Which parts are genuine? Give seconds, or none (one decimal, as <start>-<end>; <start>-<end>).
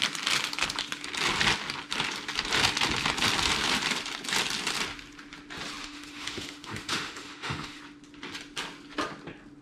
0.0-5.8; 7.8-9.6